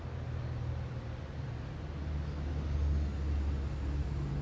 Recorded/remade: recorded